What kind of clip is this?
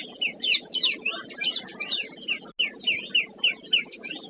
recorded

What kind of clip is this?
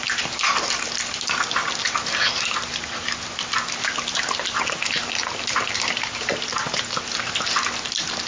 recorded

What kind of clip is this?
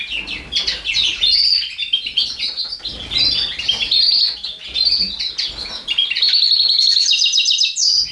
recorded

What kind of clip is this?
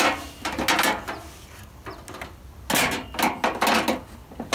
recorded